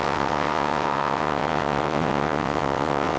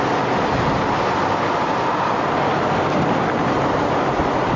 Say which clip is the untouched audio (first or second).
second